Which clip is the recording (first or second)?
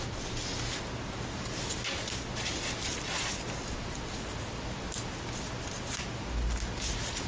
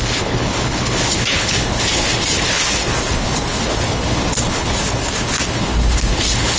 first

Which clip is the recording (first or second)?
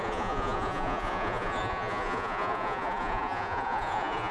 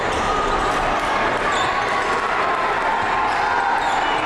second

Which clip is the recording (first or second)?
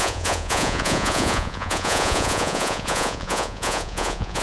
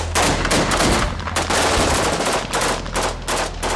second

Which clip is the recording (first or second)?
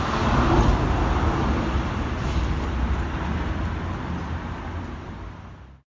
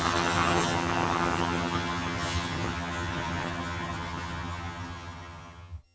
first